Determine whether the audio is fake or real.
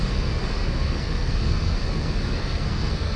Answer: fake